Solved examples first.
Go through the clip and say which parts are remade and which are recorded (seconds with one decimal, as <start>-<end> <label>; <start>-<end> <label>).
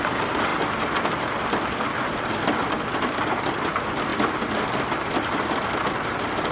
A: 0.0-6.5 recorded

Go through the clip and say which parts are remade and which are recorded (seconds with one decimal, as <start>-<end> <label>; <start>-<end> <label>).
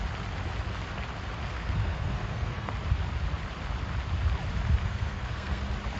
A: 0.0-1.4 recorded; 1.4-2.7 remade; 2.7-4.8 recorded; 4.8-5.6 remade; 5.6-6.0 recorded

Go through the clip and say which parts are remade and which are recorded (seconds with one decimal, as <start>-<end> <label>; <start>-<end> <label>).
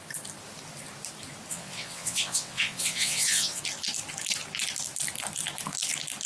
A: 0.0-1.5 recorded; 1.5-3.6 remade; 3.6-6.3 recorded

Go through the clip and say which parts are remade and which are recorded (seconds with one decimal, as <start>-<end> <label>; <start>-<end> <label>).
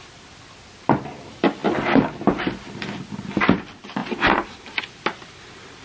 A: 0.0-5.8 recorded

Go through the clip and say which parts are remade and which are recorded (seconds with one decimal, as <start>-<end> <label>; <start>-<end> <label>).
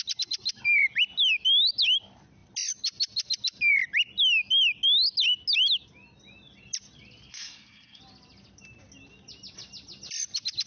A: 0.0-7.3 recorded; 7.3-8.0 remade; 8.0-10.7 recorded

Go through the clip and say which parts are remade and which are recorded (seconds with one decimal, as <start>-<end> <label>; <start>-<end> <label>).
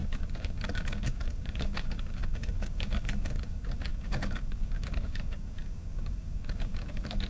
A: 0.0-7.3 remade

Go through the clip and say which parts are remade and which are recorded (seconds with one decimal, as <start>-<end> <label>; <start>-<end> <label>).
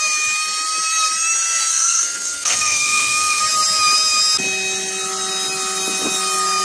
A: 0.0-1.7 recorded; 1.7-3.4 remade; 3.4-6.6 recorded